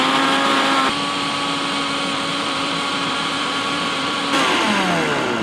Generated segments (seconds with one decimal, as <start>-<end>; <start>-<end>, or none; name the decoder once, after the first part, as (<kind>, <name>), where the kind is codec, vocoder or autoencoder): 2.3-4.2 (vocoder, BigVGAN v2)

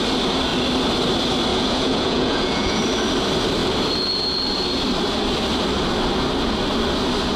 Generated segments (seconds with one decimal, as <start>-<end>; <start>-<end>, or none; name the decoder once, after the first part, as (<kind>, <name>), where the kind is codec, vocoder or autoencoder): 1.5-2.8 (vocoder, Vocos)

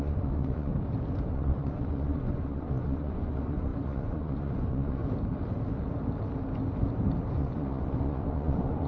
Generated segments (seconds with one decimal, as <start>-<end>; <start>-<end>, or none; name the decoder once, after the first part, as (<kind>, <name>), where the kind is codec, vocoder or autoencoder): 0.0-0.7 (vocoder, Vocos); 1.3-5.0; 7.3-8.9

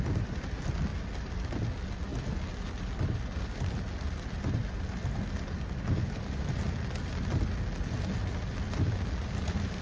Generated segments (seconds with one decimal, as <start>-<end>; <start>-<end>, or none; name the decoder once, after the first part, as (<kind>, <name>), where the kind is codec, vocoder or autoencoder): none

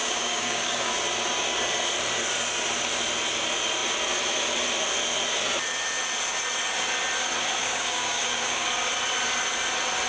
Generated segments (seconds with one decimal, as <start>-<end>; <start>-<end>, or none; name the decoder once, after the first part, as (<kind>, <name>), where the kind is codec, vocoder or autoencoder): 0.0-0.9 (codec, DAC); 7.6-8.7

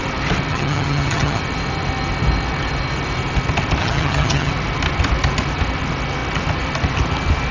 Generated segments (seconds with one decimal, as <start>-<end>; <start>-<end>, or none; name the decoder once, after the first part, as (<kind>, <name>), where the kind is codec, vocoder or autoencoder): 0.5-1.4 (vocoder, HiFi-GAN); 3.8-4.5

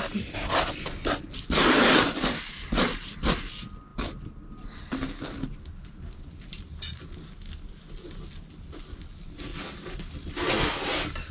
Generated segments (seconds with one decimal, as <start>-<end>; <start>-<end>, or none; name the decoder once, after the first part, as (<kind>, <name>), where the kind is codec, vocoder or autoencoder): none

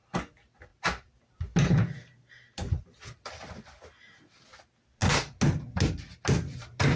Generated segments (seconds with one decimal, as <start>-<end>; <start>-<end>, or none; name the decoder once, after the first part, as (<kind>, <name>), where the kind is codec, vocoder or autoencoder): none